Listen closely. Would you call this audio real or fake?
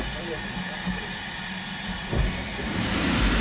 real